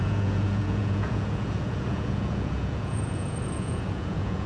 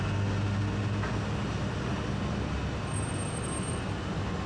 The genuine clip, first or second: second